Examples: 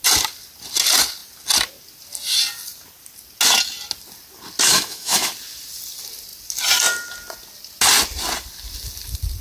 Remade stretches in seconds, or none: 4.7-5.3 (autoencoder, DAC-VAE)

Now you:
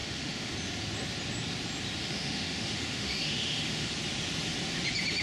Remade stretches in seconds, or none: 0.0-0.5 (autoencoder, DAC-VAE); 2.0-3.9

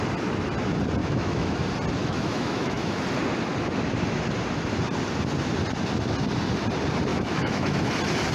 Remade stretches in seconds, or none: 1.0-1.6 (autoencoder, DAC-VAE); 2.0-3.0; 7.1-7.9

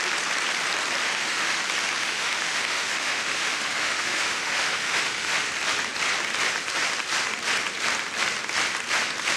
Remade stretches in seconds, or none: 1.0-1.6 (autoencoder, DAC-VAE); 2.0-5.5

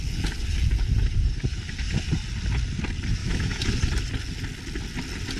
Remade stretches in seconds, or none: 3.2-3.7 (autoencoder, DAC-VAE)

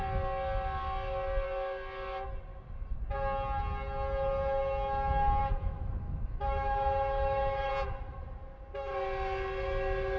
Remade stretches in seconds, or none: 5.4-7.7 (autoencoder, DAC-VAE)